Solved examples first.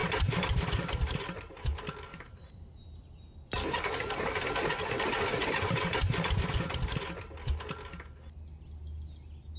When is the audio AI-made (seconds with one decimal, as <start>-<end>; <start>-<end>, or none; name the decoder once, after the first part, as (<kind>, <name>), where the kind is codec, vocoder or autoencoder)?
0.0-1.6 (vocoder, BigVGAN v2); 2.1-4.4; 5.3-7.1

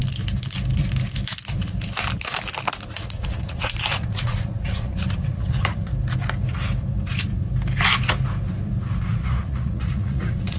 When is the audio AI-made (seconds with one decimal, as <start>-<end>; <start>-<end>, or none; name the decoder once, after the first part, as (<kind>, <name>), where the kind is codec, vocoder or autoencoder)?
2.9-5.9 (vocoder, Vocos); 9.0-10.6

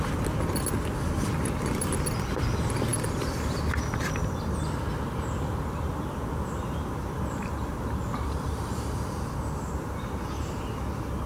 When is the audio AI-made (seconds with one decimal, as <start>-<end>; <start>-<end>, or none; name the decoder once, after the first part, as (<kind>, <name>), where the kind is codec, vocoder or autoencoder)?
none

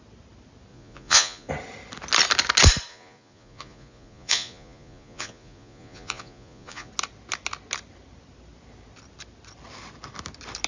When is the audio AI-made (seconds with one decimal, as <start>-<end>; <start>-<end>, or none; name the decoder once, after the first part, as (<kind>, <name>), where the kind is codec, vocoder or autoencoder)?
0.7-1.5 (vocoder, Vocos); 2.9-6.9